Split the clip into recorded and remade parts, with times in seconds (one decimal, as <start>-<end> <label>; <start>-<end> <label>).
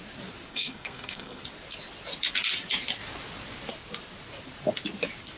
0.0-0.5 recorded; 0.5-1.4 remade; 1.4-5.4 recorded